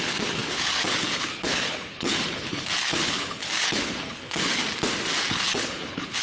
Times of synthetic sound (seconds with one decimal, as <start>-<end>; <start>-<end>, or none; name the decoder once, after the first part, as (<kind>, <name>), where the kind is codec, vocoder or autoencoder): 0.0-4.6 (codec, HILCodec); 5.3-6.2